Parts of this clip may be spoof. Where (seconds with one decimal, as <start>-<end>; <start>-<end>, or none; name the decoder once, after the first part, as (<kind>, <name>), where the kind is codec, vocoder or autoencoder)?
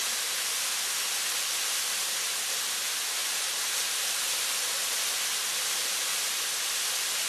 none